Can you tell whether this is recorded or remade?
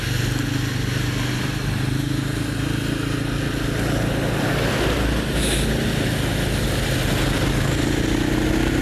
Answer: recorded